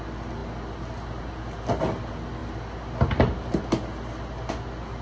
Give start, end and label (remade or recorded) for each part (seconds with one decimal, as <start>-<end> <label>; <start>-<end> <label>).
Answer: 0.0-5.0 recorded

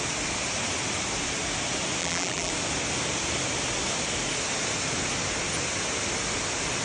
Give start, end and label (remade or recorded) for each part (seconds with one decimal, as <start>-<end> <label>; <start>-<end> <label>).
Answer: 0.0-2.0 recorded; 2.0-2.5 remade; 2.5-6.8 recorded

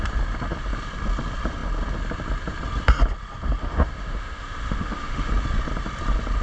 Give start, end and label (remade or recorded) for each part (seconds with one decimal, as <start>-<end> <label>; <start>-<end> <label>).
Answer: 0.0-3.6 recorded; 3.6-5.3 remade; 5.3-6.4 recorded

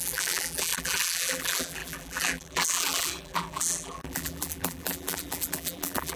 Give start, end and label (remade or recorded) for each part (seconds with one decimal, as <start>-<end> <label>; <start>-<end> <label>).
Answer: 0.0-6.2 remade

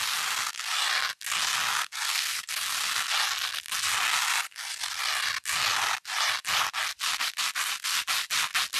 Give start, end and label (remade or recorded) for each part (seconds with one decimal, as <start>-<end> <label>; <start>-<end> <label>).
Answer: 0.0-1.8 recorded; 1.8-2.5 remade; 2.5-8.8 recorded

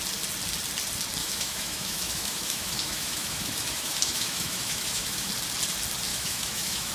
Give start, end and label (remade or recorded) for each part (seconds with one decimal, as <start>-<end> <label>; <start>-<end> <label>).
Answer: 0.0-1.2 recorded; 1.2-5.3 remade; 5.3-6.1 recorded; 6.1-6.9 remade